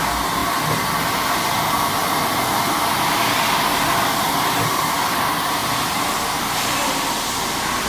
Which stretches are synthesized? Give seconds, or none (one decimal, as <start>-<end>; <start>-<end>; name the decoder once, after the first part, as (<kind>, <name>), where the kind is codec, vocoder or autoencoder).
none